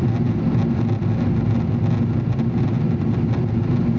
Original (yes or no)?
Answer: yes